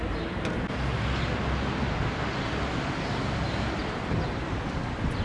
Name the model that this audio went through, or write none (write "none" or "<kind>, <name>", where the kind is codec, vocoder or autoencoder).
none